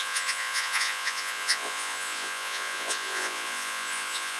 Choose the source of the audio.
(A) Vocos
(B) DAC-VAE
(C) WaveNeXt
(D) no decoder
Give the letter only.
A